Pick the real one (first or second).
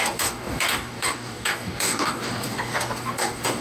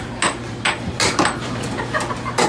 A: second